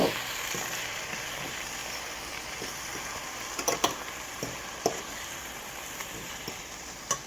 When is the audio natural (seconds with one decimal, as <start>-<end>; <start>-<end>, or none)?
1.8-2.3; 6.0-6.5